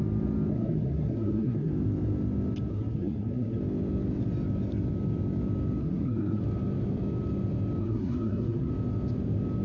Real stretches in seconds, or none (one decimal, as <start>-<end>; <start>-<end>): 0.0-0.5; 1.7-2.7; 3.6-5.8; 6.4-7.8; 8.7-9.6

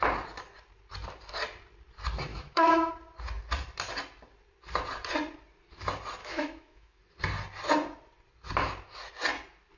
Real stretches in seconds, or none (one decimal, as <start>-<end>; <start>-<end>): 0.0-2.3; 2.9-6.2; 7.0-9.8

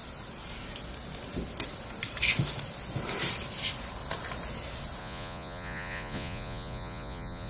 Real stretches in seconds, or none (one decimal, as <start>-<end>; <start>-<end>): 0.0-5.0

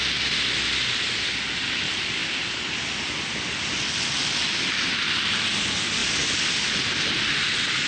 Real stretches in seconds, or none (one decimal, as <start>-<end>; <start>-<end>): 0.0-7.9

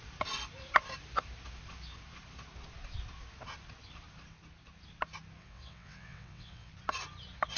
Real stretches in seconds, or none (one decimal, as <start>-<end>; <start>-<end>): 0.0-5.4; 6.7-7.6

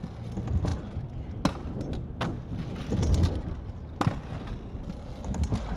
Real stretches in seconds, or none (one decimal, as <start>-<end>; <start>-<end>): 0.0-5.8

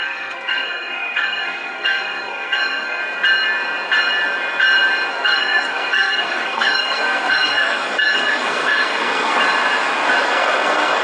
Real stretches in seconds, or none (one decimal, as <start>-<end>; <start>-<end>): 3.0-5.1; 9.4-10.2

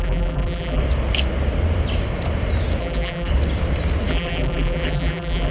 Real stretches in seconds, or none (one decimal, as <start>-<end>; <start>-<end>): 0.8-2.8; 3.3-4.1